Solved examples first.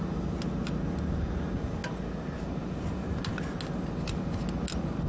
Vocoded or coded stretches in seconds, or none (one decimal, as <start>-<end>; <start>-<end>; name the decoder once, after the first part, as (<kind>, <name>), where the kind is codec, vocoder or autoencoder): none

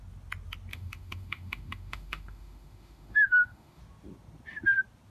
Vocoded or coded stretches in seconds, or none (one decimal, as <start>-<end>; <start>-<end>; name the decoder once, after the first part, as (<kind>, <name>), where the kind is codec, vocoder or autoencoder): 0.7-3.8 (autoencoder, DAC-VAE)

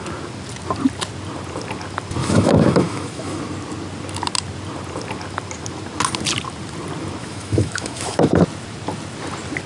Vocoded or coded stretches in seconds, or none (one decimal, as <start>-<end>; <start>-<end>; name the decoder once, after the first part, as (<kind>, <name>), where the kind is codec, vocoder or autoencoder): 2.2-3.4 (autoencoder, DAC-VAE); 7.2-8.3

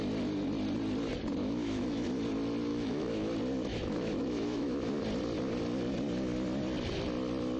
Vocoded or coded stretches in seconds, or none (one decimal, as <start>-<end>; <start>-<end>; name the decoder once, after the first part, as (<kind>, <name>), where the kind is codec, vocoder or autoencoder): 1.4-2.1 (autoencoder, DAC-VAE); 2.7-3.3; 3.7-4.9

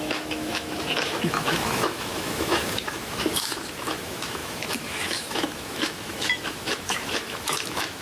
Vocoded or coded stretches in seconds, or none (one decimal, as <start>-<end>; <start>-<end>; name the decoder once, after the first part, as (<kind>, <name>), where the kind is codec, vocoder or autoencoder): 0.0-8.0 (autoencoder, DAC-VAE)

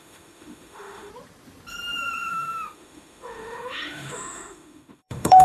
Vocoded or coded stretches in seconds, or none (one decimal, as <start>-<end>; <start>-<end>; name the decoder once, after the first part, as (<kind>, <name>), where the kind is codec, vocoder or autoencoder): 0.0-1.1 (autoencoder, DAC-VAE); 2.3-5.4

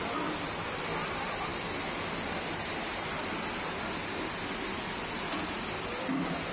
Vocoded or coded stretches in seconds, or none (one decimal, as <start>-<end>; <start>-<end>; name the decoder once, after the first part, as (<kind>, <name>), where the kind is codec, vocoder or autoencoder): none

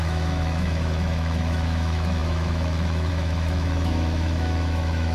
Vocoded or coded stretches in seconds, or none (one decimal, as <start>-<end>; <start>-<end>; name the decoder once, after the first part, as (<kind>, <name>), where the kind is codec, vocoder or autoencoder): 0.0-5.1 (autoencoder, DAC-VAE)